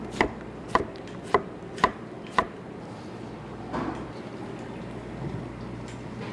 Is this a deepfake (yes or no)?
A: no